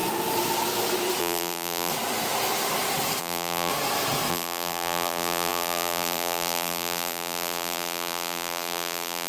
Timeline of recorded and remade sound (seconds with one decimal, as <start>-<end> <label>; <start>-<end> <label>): 0.0-1.2 recorded; 1.2-1.9 remade; 1.9-3.2 recorded; 3.2-3.7 remade; 3.7-4.3 recorded; 4.3-9.3 remade

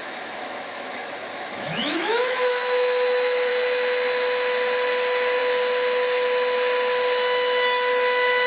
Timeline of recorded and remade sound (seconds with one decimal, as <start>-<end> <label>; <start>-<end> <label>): 0.0-3.5 remade; 3.5-8.5 recorded

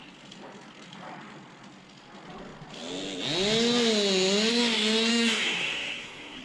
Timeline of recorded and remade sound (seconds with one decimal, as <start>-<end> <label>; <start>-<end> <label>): 0.0-5.1 recorded; 5.1-6.4 remade

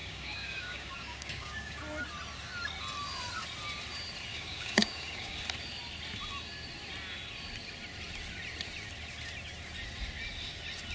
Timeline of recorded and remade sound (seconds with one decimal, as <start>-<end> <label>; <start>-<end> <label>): 0.0-1.8 remade; 1.8-4.3 recorded; 4.3-5.4 remade; 5.4-10.9 recorded

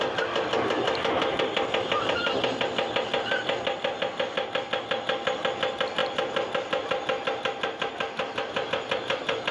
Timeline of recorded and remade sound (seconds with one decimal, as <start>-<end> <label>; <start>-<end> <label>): 0.0-9.5 recorded